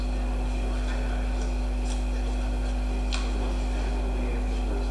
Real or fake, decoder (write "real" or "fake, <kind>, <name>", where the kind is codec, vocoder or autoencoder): real